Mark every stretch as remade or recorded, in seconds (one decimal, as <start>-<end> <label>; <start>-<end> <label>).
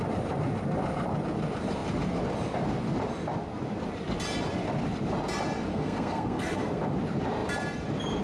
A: 0.0-5.7 recorded; 5.7-6.8 remade; 6.8-8.2 recorded